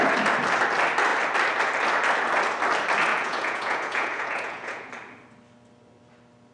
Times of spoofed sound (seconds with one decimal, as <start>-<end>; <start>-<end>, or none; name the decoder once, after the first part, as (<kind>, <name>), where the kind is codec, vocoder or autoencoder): 3.1-4.9 (vocoder, Vocos)